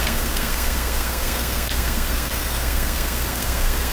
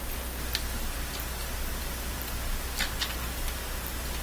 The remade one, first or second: first